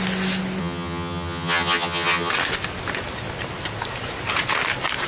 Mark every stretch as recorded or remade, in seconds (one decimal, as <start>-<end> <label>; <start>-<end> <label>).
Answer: 0.0-0.6 recorded; 0.6-2.3 remade; 2.3-5.1 recorded